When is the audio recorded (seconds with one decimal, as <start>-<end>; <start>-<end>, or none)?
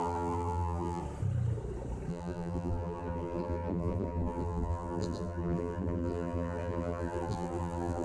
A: 1.0-2.1